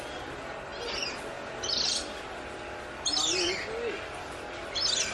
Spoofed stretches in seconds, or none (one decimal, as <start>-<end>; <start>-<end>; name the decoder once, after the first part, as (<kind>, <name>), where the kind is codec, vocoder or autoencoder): none